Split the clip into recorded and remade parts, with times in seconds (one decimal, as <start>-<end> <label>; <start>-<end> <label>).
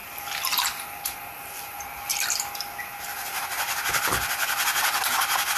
0.0-5.6 recorded